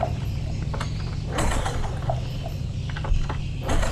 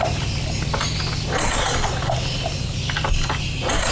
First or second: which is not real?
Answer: first